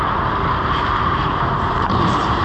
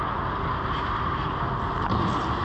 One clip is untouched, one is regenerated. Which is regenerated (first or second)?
first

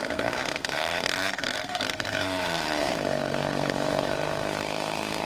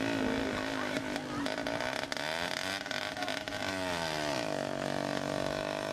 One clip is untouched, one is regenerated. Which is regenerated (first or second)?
first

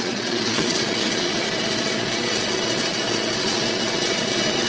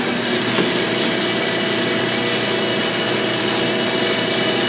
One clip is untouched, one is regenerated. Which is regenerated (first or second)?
first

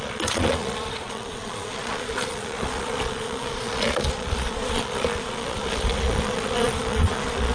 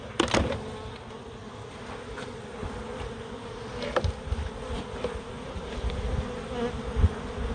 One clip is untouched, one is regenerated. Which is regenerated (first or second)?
first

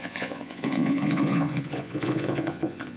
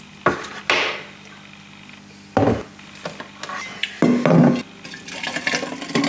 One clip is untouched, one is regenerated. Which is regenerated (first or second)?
first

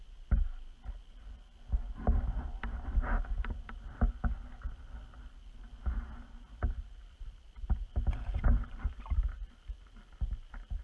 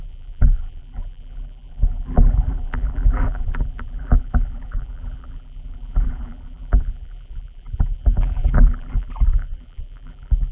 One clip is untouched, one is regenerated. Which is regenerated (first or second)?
second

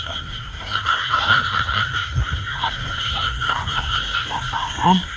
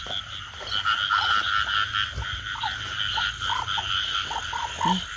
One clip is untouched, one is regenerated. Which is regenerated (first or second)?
first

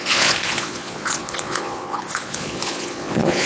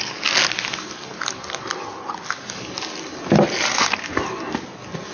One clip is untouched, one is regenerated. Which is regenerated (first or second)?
first